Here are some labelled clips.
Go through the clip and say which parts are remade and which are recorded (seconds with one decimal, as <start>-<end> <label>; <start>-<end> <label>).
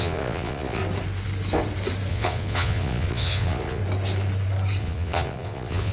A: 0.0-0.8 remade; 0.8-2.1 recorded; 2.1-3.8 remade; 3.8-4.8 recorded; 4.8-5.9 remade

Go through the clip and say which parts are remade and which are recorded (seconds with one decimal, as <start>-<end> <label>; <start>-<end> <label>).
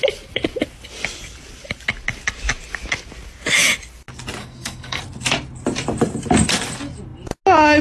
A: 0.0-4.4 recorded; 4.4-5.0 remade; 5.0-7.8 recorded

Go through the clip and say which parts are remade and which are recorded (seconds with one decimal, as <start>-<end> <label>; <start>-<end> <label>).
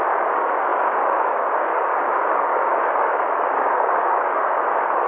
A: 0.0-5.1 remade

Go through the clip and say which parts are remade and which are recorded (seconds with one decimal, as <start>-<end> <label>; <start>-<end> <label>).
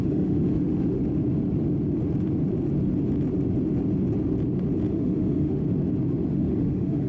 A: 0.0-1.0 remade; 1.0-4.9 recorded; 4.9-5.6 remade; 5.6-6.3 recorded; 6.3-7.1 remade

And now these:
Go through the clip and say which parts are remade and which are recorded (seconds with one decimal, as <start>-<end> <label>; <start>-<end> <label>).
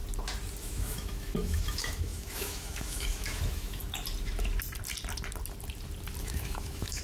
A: 0.0-0.6 recorded; 0.6-3.8 remade; 3.8-6.2 recorded; 6.2-7.0 remade